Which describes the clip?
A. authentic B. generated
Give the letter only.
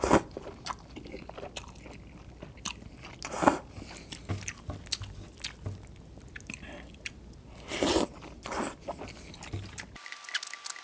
A